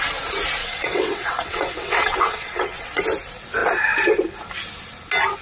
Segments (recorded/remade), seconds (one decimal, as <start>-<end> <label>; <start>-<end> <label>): 0.0-0.6 recorded; 0.6-3.0 remade; 3.0-5.4 recorded